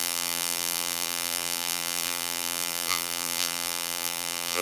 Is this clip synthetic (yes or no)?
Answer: yes